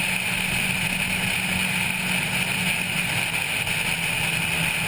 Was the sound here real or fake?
real